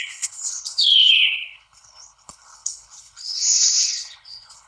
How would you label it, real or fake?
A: fake